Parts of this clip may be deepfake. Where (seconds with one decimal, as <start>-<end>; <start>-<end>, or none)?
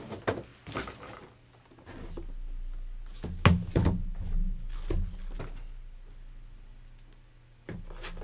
none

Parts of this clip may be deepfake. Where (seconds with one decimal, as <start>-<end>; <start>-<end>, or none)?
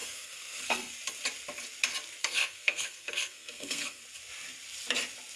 0.0-0.9; 2.2-4.0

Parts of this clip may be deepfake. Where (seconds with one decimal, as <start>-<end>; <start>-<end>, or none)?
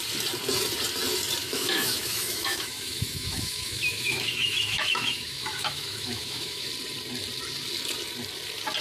1.4-6.7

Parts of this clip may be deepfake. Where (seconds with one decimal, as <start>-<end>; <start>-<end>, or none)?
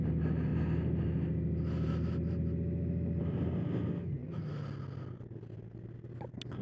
none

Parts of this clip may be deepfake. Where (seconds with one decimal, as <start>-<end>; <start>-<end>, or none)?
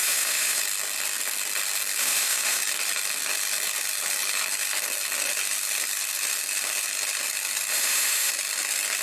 0.0-0.6; 2.0-2.6; 7.7-8.3